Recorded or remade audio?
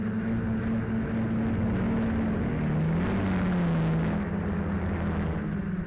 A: recorded